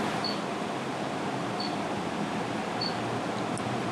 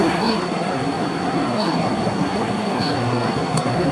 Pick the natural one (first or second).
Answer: first